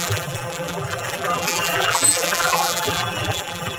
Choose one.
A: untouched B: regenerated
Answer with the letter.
B